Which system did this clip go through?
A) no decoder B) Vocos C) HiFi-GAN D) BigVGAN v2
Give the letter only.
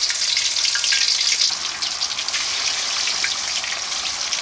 A